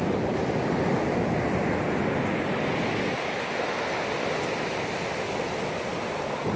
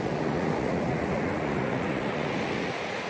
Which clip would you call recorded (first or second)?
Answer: first